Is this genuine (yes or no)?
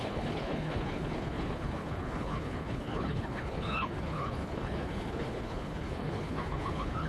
no